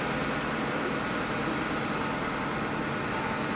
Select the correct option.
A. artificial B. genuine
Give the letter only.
B